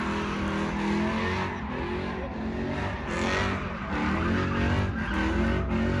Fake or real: real